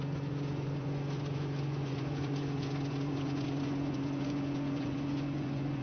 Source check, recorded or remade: remade